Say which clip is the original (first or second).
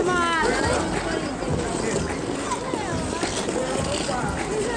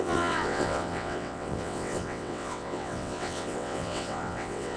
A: first